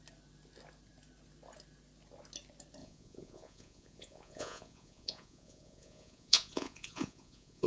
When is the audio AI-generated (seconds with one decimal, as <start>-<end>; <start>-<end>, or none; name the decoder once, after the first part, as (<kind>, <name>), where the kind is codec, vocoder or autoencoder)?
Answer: 2.8-7.7 (vocoder, Vocos)